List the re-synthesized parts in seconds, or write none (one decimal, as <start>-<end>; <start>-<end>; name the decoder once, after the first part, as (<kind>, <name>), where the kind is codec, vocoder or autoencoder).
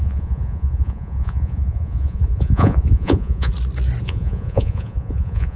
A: 0.0-3.5 (vocoder, Vocos); 4.0-5.6